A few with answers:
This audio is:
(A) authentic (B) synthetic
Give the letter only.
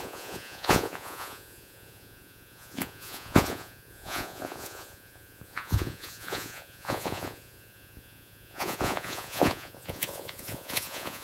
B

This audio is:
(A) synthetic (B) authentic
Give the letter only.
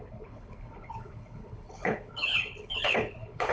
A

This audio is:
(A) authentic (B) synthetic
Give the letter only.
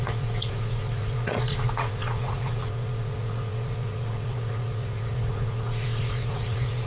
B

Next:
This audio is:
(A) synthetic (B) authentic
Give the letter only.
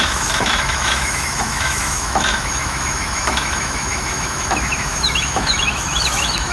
A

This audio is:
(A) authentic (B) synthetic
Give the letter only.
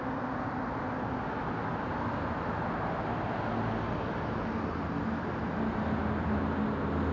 A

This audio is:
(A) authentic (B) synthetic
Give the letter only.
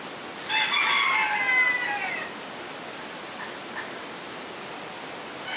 A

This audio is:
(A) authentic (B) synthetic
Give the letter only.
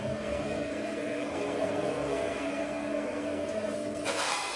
B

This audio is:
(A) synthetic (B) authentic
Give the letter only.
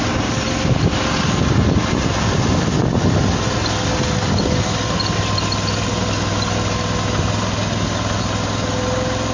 B